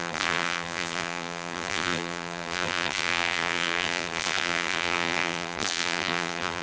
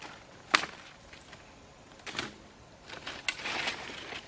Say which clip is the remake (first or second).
first